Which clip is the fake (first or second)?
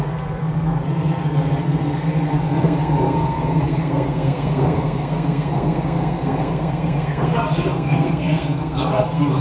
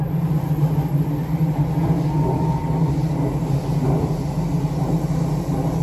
first